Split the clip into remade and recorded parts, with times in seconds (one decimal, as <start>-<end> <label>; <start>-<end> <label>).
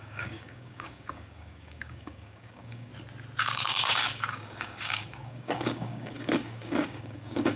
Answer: 0.0-2.9 remade; 2.9-3.4 recorded; 3.4-7.6 remade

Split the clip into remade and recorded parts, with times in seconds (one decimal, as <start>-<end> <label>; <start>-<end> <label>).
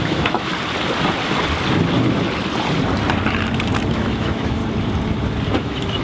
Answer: 0.0-0.5 remade; 0.5-3.9 recorded; 3.9-4.6 remade; 4.6-5.6 recorded; 5.6-6.0 remade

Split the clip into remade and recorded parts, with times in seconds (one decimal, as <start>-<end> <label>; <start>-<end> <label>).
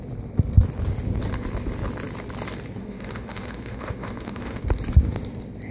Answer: 0.0-2.8 recorded; 2.8-4.6 remade; 4.6-5.7 recorded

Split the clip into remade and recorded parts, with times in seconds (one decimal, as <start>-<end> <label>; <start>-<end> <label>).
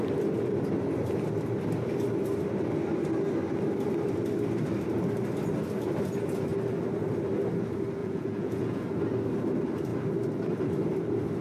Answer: 0.0-8.0 recorded; 8.0-8.8 remade; 8.8-11.4 recorded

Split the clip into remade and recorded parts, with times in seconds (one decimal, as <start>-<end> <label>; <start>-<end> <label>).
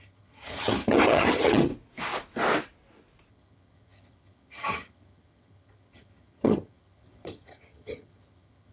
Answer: 0.0-1.7 remade; 1.7-3.3 recorded; 3.3-8.7 remade